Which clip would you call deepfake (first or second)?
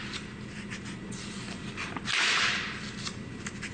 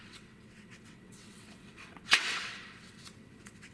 second